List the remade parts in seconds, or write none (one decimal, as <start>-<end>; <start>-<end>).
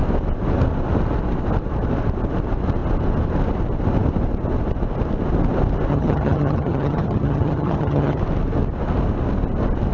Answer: 5.9-8.2